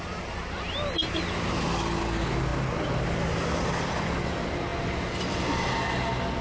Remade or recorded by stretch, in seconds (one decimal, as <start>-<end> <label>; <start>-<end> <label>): 0.0-6.4 recorded

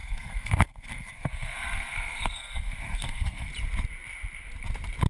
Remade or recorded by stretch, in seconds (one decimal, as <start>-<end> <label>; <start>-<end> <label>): 0.0-3.5 remade; 3.5-5.1 recorded

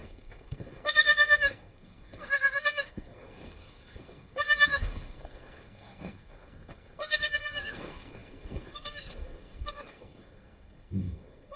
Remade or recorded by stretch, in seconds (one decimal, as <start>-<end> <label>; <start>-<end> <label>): 0.0-11.6 remade

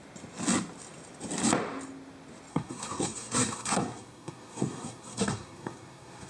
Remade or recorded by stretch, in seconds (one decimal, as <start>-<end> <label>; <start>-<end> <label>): 0.0-2.5 recorded; 2.5-6.3 remade

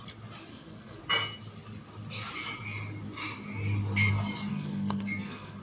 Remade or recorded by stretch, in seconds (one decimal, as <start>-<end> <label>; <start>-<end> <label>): 0.0-0.5 recorded; 0.5-1.0 remade; 1.0-4.5 recorded; 4.5-5.6 remade

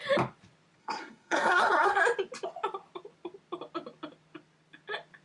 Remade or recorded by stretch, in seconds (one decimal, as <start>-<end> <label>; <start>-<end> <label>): 0.0-0.8 recorded; 0.8-2.0 remade; 2.0-5.2 recorded

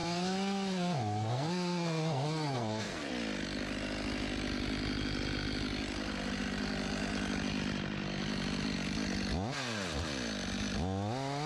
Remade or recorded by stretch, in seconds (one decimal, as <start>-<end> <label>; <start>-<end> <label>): 0.0-3.1 remade; 3.1-11.5 recorded